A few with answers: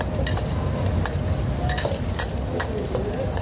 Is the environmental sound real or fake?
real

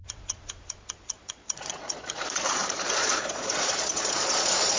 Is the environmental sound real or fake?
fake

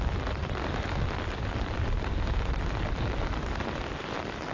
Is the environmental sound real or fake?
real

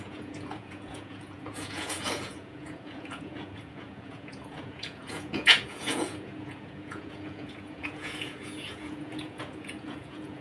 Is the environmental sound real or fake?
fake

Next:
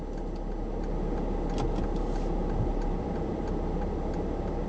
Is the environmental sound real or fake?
real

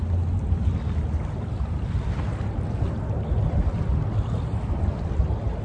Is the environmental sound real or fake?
real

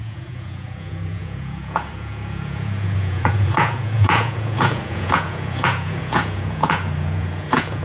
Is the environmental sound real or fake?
fake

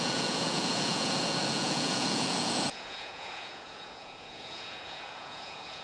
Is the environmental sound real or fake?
fake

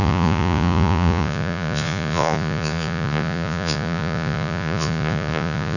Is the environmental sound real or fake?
fake